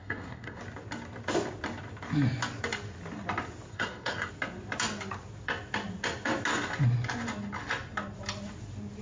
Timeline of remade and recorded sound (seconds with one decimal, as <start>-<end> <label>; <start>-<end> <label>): 0.0-0.6 remade; 0.6-3.7 recorded; 3.7-4.3 remade; 4.3-9.0 recorded